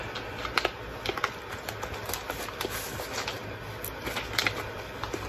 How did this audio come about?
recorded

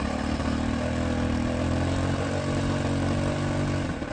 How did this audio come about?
recorded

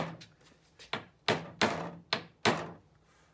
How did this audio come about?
recorded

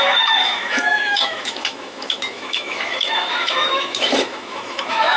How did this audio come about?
remade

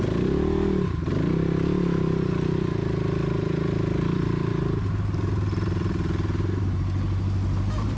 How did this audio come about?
recorded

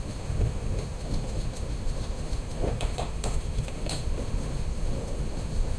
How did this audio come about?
remade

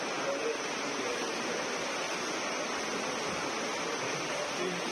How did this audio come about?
recorded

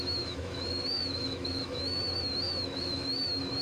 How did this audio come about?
remade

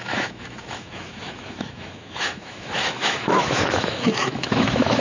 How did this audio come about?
remade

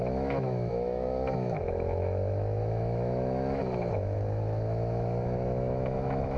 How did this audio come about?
remade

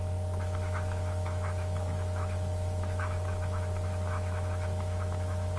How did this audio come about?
remade